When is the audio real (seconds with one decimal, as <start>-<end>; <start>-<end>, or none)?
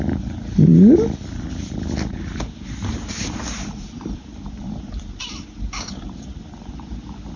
0.7-1.5